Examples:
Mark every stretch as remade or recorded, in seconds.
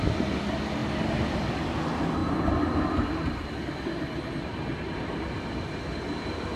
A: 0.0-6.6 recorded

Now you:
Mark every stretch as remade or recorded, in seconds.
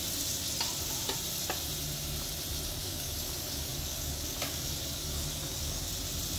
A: 0.0-2.8 recorded; 2.8-5.9 remade; 5.9-6.4 recorded